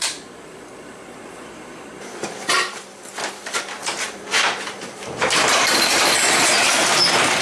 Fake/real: fake